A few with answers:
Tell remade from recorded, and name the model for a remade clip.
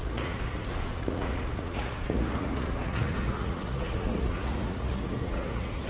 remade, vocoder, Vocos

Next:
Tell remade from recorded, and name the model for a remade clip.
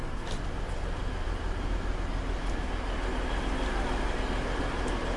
recorded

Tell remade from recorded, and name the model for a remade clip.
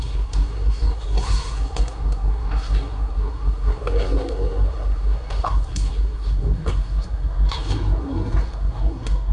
remade, codec, SNAC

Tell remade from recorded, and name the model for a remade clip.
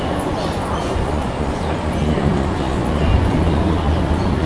remade, vocoder, Vocos